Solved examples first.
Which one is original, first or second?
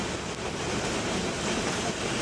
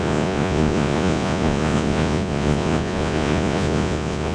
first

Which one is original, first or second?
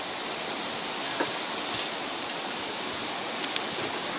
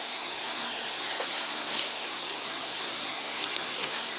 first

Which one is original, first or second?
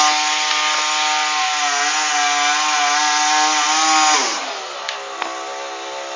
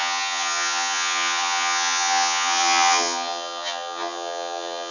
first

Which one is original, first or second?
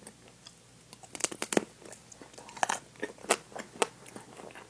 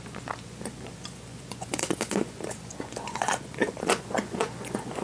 first